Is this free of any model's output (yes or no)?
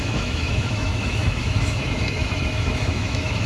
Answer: no